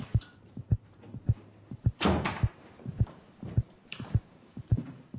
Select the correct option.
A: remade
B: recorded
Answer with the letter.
A